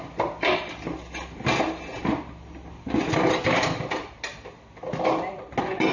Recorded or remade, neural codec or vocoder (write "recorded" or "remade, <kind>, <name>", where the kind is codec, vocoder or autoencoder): recorded